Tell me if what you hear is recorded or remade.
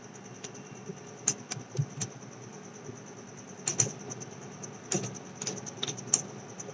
recorded